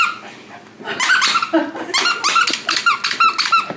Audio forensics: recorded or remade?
recorded